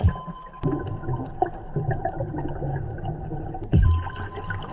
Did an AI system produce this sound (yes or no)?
no